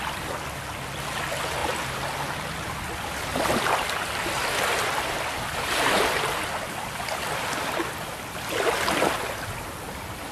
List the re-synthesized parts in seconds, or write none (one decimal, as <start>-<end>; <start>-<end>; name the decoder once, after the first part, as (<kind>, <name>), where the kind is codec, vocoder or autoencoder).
none